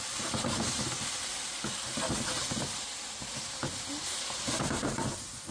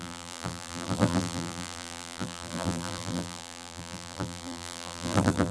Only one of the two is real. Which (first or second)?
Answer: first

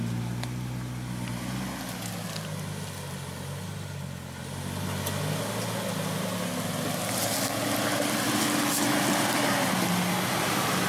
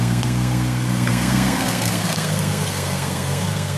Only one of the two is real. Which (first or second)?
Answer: first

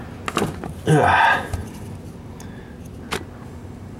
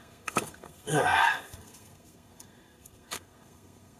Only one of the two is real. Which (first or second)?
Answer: first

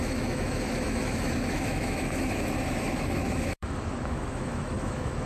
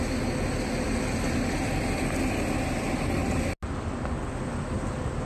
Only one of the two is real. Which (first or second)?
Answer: second